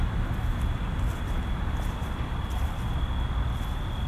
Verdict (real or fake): real